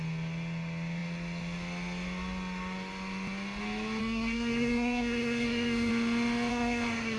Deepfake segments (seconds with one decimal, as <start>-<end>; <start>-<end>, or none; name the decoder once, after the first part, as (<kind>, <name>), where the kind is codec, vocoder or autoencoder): 4.0-5.9 (codec, SNAC); 6.5-7.2